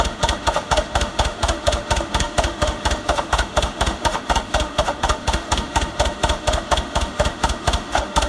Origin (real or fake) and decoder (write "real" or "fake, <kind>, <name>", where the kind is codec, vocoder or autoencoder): fake, autoencoder, DAC-VAE